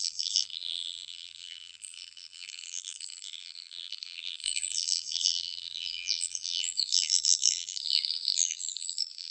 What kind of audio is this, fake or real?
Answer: fake